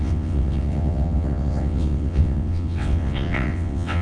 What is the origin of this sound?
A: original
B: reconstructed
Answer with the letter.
B